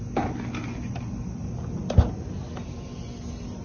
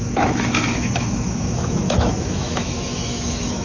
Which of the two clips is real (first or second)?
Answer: first